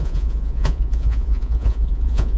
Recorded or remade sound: remade